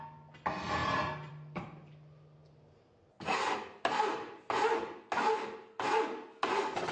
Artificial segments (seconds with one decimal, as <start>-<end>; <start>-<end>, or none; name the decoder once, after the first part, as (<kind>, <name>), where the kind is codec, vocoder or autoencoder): none

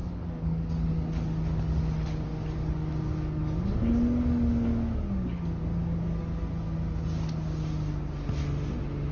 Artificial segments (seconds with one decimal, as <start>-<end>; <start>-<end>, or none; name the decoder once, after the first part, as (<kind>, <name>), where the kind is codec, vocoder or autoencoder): 0.0-1.1 (codec, DAC); 2.3-6.3

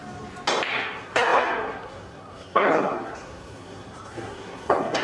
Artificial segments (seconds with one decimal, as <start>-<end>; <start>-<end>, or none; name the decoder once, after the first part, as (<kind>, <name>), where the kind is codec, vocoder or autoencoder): 0.7-5.0 (codec, SNAC)

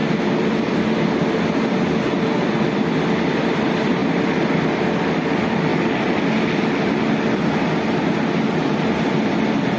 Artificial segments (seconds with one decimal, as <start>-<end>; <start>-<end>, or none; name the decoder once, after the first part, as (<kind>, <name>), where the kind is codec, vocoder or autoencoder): 2.9-5.7 (vocoder, BigVGAN v2); 9.1-9.8

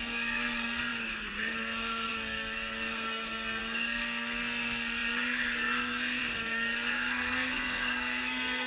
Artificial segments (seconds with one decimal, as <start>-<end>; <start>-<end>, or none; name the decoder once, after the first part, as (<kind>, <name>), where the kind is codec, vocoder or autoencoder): 0.0-8.7 (codec, SNAC)

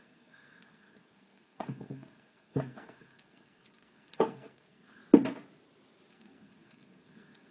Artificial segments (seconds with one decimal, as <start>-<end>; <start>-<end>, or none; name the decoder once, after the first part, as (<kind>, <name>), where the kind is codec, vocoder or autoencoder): 0.0-5.0 (codec, SNAC); 6.1-7.5